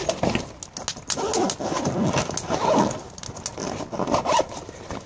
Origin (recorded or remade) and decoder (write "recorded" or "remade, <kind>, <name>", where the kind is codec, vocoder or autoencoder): recorded